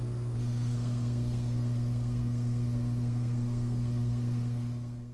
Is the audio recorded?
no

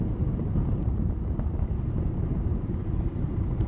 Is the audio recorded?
no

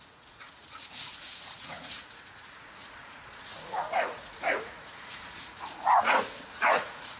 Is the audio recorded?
no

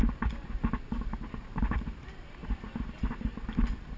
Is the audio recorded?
yes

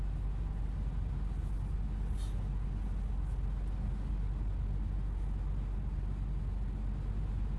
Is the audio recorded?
yes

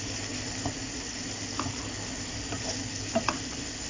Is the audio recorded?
yes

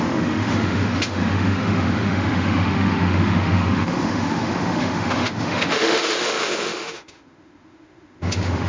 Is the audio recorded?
no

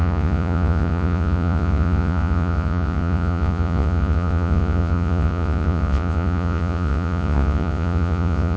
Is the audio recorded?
no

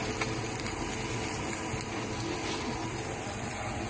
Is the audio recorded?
yes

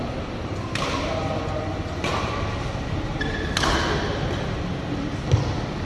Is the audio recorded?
yes